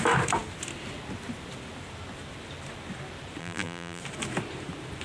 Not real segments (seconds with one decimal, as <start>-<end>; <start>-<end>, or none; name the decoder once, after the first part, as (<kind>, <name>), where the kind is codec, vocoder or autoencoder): 3.4-4.0 (vocoder, BigVGAN v2)